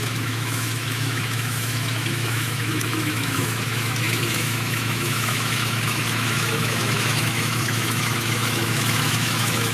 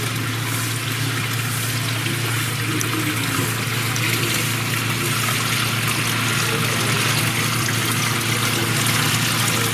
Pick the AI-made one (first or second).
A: first